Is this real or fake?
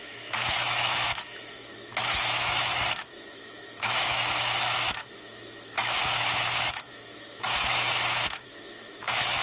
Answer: fake